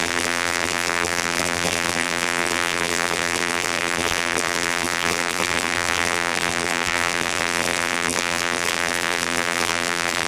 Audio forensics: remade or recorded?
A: remade